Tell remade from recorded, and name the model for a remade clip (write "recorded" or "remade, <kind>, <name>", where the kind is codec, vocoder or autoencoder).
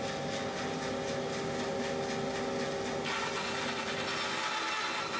recorded